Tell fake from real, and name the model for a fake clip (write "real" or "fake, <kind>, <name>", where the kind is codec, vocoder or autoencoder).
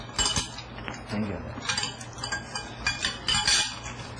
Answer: real